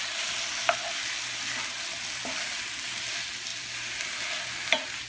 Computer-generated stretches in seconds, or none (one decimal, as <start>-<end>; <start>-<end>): none